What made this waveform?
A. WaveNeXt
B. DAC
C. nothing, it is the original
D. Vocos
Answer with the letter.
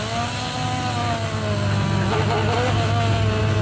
C